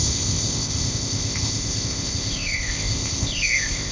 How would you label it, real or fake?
fake